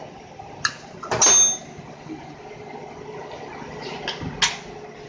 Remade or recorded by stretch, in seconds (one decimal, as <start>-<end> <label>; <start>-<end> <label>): 0.0-1.1 remade; 1.1-5.1 recorded